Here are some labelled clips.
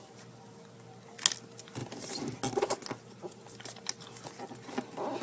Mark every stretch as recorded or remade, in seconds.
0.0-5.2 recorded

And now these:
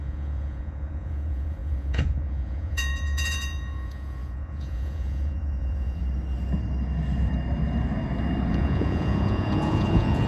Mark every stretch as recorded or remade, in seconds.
0.0-6.0 remade; 6.0-8.5 recorded; 8.5-10.3 remade

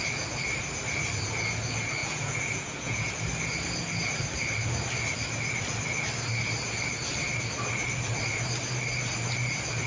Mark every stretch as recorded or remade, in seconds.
0.0-2.0 recorded; 2.0-3.1 remade; 3.1-9.9 recorded

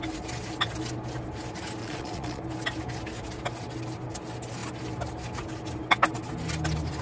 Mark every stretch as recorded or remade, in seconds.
0.0-1.8 recorded; 1.8-2.4 remade; 2.4-7.0 recorded